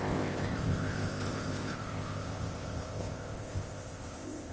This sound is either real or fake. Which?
fake